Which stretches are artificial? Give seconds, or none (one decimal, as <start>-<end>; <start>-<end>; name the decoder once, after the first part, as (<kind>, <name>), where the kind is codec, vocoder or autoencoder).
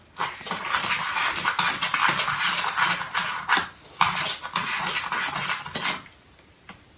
none